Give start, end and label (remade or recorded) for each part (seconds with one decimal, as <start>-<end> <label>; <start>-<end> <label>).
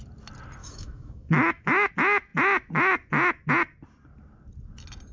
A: 0.0-0.6 recorded; 0.6-1.9 remade; 1.9-5.1 recorded